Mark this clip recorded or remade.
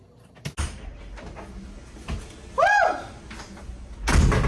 recorded